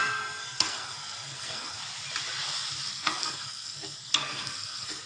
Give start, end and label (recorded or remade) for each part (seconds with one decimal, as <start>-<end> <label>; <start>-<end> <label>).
0.0-1.8 remade; 1.8-2.9 recorded; 2.9-5.1 remade